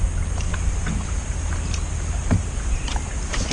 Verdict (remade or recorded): recorded